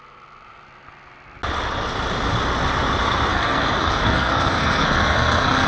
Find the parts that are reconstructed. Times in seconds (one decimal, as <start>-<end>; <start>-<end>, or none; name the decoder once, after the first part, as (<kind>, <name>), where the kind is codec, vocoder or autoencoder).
3.3-5.7 (codec, SNAC)